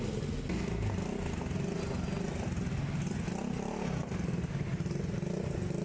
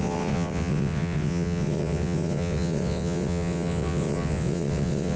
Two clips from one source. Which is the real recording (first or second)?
first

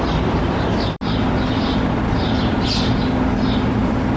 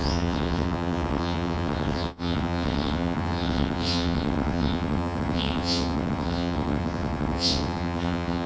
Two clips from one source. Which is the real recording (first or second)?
first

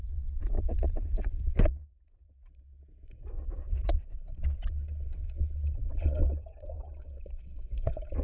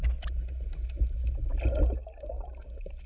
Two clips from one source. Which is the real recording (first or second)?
second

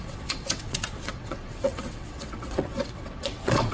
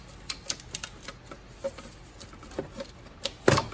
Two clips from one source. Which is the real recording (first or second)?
second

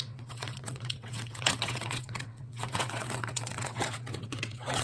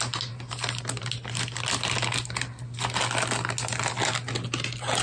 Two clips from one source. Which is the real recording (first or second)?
second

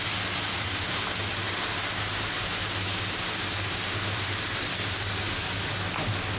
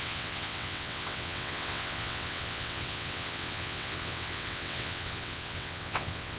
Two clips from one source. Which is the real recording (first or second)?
first